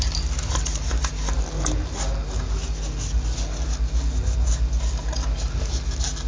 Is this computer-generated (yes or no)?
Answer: no